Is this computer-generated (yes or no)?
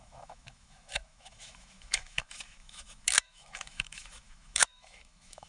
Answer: yes